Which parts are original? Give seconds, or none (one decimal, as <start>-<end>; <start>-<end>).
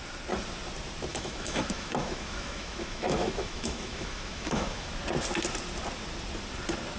0.0-1.1; 4.9-7.0